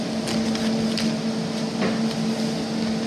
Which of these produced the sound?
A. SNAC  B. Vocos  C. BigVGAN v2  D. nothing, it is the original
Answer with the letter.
D